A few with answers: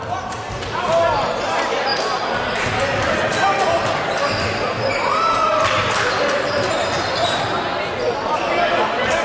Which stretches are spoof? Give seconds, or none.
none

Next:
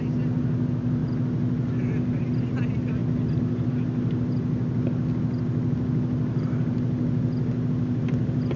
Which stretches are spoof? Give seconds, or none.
none